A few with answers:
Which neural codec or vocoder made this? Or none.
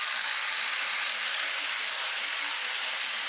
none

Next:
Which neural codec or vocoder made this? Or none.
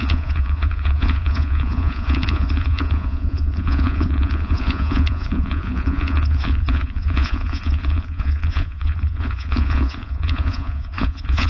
vocoder, Vocos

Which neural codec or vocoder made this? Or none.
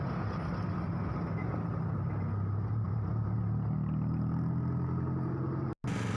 none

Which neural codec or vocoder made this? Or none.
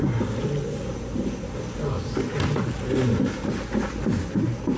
none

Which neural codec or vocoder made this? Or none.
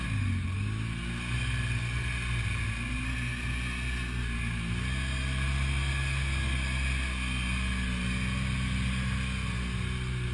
none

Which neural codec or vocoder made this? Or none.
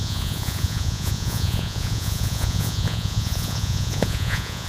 vocoder, Vocos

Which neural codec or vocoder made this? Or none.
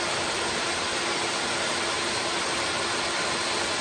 none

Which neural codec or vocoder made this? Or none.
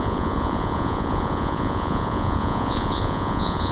vocoder, Vocos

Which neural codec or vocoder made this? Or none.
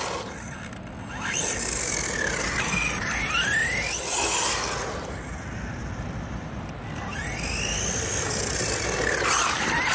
none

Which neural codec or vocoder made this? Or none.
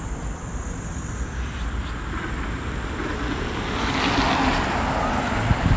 none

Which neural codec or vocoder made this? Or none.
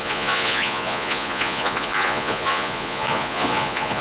vocoder, Vocos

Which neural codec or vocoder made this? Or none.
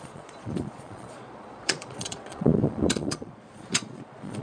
vocoder, Vocos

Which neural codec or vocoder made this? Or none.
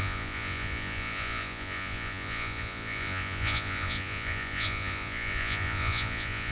vocoder, Vocos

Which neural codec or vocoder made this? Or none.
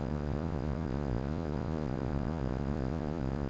vocoder, Vocos